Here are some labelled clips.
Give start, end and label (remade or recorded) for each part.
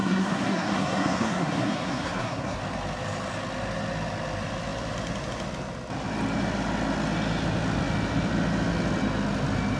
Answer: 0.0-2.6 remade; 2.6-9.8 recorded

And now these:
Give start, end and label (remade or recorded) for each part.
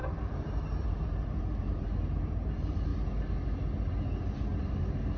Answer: 0.0-2.9 remade; 2.9-4.6 recorded; 4.6-5.2 remade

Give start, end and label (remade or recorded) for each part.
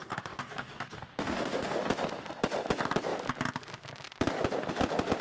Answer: 0.0-1.8 remade; 1.8-5.2 recorded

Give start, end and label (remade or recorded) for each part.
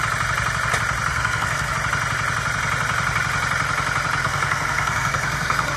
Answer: 0.0-1.1 recorded; 1.1-1.7 remade; 1.7-4.2 recorded; 4.2-5.8 remade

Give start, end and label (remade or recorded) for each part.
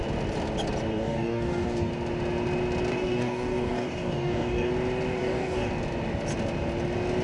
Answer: 0.0-0.9 recorded; 0.9-1.9 remade; 1.9-2.9 recorded; 2.9-4.7 remade; 4.7-5.2 recorded; 5.2-5.7 remade; 5.7-7.2 recorded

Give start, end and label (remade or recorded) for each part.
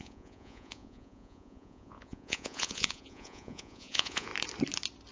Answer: 0.0-4.3 remade; 4.3-5.1 recorded